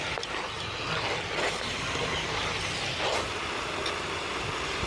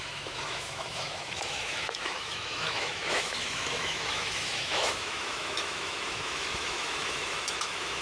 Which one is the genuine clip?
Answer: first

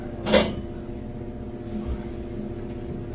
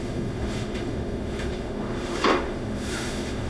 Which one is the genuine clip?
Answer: first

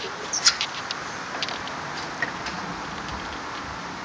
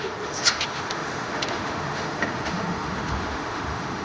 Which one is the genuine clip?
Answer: first